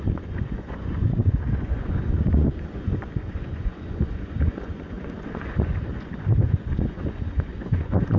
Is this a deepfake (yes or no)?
yes